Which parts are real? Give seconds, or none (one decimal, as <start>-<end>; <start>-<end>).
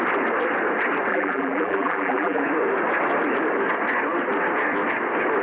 0.0-1.1; 2.4-5.4